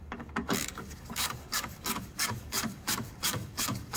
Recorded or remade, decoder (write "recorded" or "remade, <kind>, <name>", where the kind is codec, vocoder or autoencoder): remade, codec, DAC